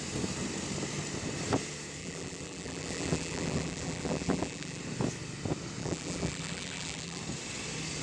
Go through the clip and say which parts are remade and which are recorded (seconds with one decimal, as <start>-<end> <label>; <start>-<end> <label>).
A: 0.0-2.0 recorded; 2.0-4.8 remade; 4.8-5.8 recorded; 5.8-7.2 remade; 7.2-8.0 recorded